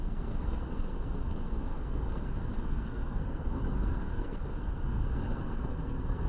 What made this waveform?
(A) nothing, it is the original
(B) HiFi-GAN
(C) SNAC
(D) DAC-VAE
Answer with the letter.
C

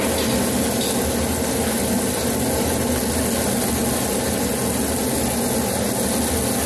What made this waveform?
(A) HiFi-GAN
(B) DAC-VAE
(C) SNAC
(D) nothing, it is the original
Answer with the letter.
D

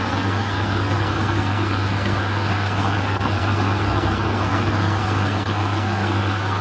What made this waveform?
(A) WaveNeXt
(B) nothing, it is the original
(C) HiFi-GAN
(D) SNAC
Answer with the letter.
D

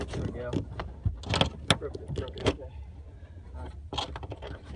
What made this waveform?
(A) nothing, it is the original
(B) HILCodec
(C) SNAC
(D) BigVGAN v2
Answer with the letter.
A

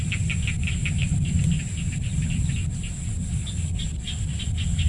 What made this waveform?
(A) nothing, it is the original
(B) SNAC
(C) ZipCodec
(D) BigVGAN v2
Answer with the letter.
A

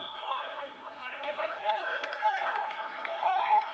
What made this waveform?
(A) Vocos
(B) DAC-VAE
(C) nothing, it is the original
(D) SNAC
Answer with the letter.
D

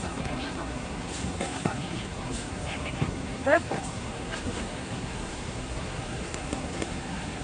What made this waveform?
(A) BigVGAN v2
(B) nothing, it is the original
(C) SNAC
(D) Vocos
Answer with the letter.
C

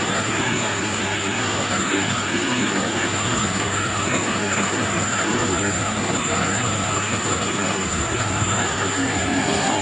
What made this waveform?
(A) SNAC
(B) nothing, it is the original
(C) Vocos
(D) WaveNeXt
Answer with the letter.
A